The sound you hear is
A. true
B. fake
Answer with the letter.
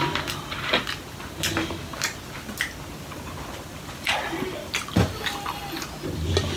A